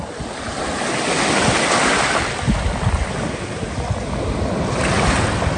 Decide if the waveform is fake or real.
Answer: real